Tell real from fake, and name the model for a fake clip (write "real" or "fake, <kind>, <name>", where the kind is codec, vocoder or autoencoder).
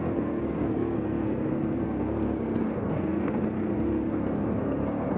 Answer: fake, codec, SNAC